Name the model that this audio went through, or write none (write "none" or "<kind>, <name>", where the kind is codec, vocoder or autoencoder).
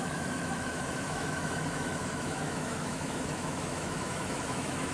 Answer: autoencoder, DAC-VAE